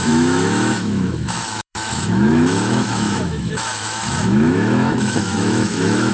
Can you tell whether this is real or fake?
fake